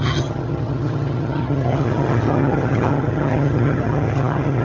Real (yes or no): no